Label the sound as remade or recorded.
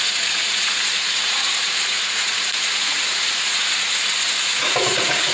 remade